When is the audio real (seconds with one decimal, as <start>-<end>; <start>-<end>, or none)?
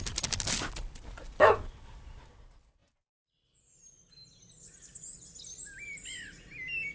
0.0-6.9